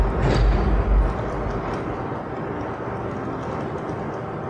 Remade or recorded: recorded